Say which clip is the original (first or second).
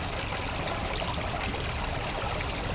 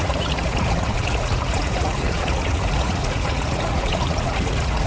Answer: first